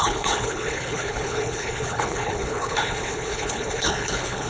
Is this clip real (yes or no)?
no